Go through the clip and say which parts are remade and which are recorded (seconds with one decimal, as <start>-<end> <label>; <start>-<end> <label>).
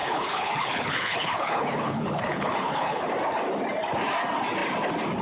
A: 0.0-3.1 remade; 3.1-5.2 recorded